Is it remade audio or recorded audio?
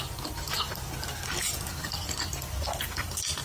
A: recorded